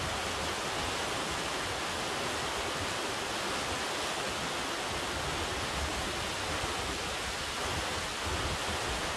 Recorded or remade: recorded